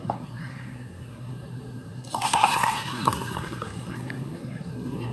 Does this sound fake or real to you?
fake